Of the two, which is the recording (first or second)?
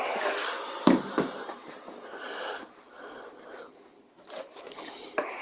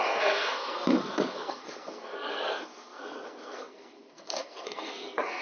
first